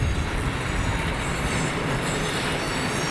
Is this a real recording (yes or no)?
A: yes